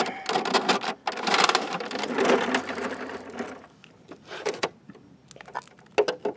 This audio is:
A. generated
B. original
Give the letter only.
B